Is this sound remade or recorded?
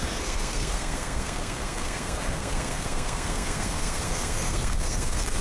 remade